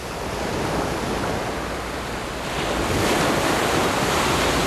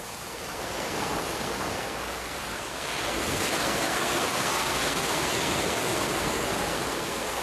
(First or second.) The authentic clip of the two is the first